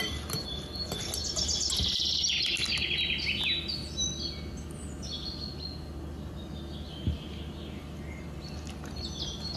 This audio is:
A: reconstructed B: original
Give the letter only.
B